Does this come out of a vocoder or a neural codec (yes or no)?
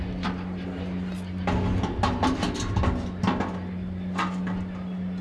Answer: no